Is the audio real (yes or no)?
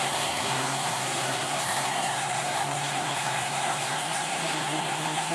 no